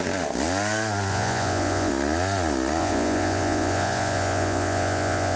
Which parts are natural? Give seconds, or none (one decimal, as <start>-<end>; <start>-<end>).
0.0-1.1; 1.9-2.8